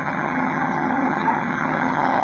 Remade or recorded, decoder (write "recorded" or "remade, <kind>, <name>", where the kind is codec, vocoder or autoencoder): remade, vocoder, HiFi-GAN